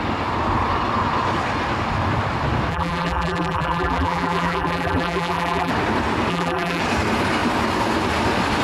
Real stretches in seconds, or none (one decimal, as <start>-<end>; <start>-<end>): 0.0-2.7; 5.7-6.3; 6.8-8.6